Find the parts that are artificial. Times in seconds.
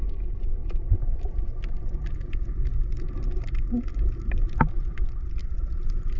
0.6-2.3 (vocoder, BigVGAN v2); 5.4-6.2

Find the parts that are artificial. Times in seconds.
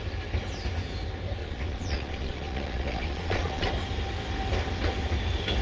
1.4-3.7 (vocoder, Vocos)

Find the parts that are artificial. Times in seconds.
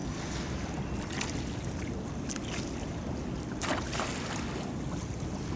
none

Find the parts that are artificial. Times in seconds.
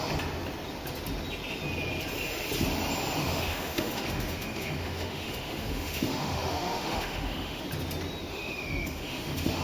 3.2-7.6 (autoencoder, DAC-VAE); 8.3-9.6